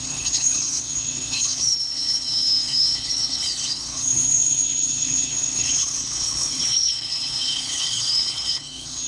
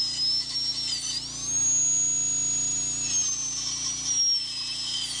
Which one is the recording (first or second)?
second